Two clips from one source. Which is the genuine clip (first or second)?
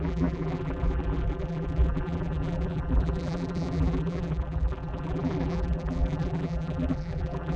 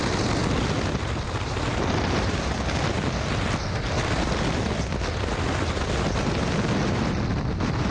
second